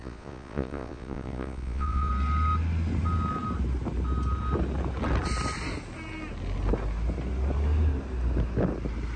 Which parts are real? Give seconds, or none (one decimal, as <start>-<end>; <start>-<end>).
2.1-9.2